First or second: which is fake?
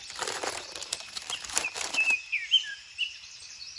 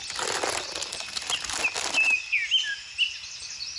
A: first